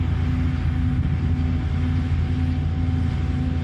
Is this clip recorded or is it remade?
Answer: recorded